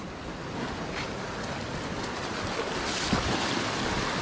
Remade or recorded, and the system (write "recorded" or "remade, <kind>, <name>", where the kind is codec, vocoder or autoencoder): recorded